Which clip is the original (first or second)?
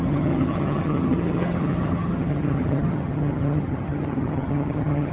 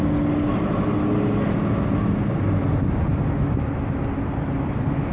second